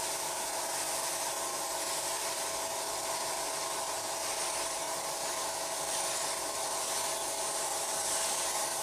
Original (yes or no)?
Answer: yes